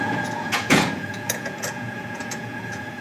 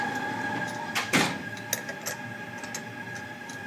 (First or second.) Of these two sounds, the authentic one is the second